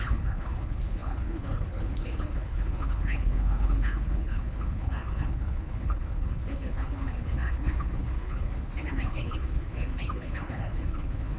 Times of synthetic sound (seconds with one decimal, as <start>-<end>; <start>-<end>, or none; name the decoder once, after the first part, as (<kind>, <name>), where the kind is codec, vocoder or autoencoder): 0.0-11.4 (codec, HILCodec)